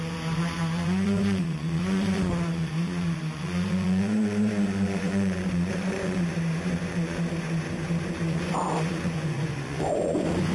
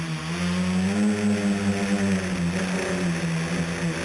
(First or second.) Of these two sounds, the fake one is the first